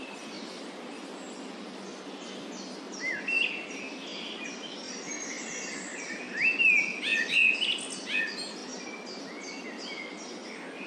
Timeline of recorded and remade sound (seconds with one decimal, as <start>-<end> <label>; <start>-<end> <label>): 0.0-10.9 recorded